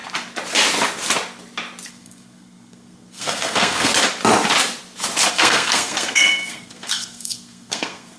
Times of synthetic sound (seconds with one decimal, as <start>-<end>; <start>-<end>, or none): 1.9-3.9; 5.3-8.2